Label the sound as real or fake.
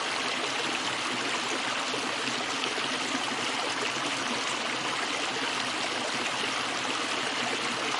real